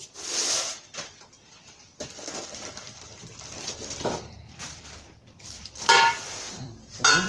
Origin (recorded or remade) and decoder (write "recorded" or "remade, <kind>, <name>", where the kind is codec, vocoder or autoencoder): remade, vocoder, BigVGAN v2